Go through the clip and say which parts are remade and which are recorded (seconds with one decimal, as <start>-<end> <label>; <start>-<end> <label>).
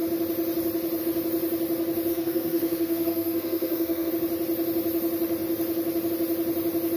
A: 0.0-2.1 recorded; 2.1-4.1 remade; 4.1-7.0 recorded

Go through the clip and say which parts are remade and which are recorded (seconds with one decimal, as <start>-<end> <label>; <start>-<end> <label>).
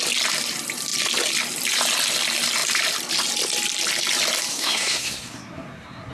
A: 0.0-4.5 recorded; 4.5-6.1 remade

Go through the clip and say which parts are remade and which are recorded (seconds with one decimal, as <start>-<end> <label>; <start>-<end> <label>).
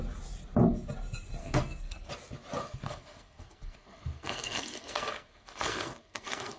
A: 0.0-1.4 recorded; 1.4-2.1 remade; 2.1-2.6 recorded; 2.6-6.6 remade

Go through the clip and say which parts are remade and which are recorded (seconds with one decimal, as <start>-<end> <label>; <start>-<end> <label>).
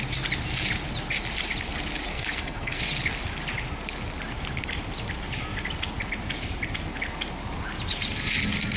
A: 0.0-2.1 recorded; 2.1-2.8 remade; 2.8-8.8 recorded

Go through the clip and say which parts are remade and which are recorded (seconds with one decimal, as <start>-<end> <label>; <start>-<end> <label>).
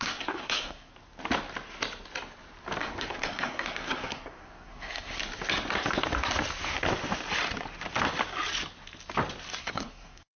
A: 0.0-0.9 remade; 0.9-2.8 recorded; 2.8-5.2 remade; 5.2-9.6 recorded; 9.6-10.4 remade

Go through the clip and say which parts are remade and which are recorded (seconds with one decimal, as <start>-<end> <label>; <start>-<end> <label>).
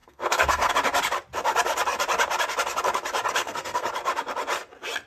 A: 0.0-0.7 remade; 0.7-3.4 recorded; 3.4-3.9 remade; 3.9-5.1 recorded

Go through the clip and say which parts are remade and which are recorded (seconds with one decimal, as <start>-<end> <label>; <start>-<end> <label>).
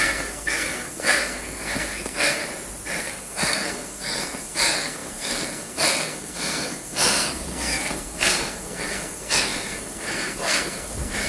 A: 0.0-2.4 remade; 2.4-3.0 recorded; 3.0-11.3 remade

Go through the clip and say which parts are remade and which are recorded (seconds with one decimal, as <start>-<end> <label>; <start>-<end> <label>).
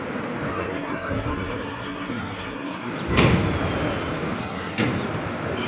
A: 0.0-0.5 recorded; 0.5-2.9 remade; 2.9-4.4 recorded; 4.4-4.9 remade; 4.9-5.7 recorded